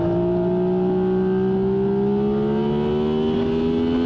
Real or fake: real